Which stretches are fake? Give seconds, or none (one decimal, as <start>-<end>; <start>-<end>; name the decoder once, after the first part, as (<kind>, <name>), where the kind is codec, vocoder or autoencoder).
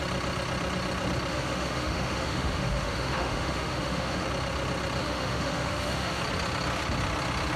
1.3-4.3 (autoencoder, DAC-VAE); 5.0-6.2